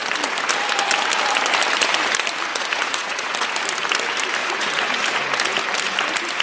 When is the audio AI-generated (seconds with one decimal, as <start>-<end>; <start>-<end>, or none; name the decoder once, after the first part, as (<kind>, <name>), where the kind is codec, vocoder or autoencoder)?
2.5-3.5 (vocoder, Vocos); 4.4-5.0